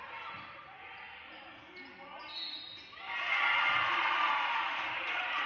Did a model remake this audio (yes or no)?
no